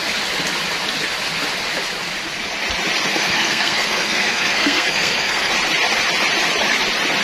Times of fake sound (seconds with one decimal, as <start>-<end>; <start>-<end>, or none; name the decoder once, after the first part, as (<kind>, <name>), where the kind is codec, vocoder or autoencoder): 3.1-5.5 (codec, SNAC)

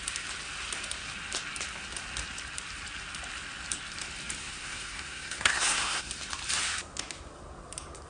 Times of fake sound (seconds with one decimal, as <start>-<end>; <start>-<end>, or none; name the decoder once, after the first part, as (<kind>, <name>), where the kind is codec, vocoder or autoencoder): 4.4-6.1 (codec, SNAC)

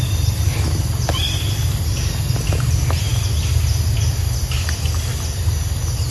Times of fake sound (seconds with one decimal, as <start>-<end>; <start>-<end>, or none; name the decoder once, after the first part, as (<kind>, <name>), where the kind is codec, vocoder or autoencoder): none